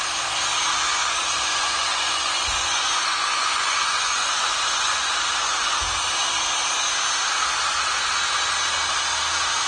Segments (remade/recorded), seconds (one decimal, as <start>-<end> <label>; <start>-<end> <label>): 0.0-0.9 recorded; 0.9-5.8 remade; 5.8-9.7 recorded